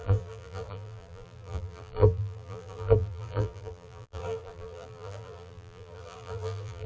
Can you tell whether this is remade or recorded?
remade